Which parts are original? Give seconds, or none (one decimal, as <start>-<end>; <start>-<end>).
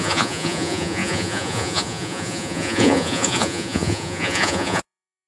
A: none